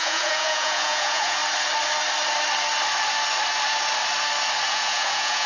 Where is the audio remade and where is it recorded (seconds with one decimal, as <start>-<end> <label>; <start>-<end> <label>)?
0.0-1.4 remade; 1.4-4.7 recorded; 4.7-5.5 remade